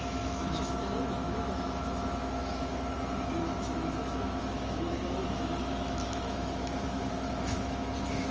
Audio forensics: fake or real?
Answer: fake